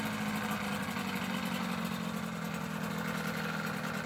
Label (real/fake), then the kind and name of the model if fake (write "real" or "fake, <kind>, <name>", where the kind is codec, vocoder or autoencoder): real